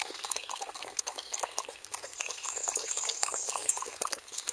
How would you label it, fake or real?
fake